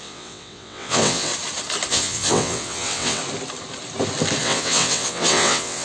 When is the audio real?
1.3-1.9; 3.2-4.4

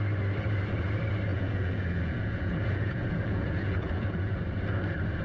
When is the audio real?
0.0-1.3; 4.4-5.2

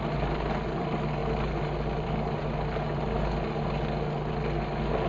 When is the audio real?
0.0-5.1

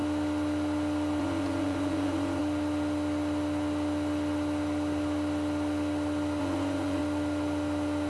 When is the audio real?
0.0-1.2; 2.4-6.4; 7.0-8.1